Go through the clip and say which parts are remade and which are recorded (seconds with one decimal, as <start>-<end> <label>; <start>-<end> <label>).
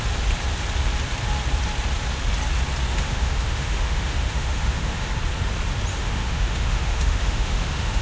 0.0-2.9 recorded; 2.9-5.1 remade; 5.1-5.9 recorded; 5.9-8.0 remade